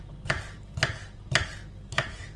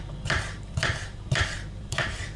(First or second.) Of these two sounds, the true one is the first